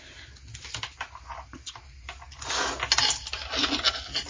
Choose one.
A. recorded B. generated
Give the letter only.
A